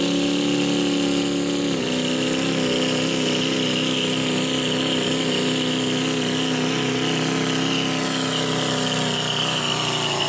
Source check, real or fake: real